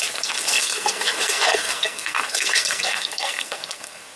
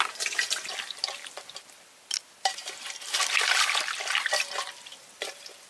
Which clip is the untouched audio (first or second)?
second